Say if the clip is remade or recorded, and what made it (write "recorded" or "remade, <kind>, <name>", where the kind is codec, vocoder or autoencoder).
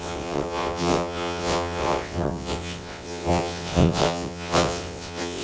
remade, vocoder, WaveNeXt